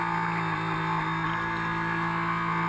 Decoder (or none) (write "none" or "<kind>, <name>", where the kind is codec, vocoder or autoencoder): none